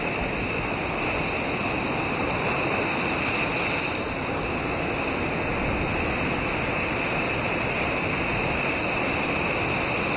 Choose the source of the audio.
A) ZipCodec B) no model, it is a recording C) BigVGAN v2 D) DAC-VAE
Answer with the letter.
B